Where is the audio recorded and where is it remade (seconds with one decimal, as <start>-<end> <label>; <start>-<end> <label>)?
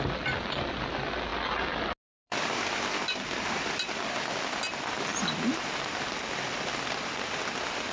0.0-7.9 recorded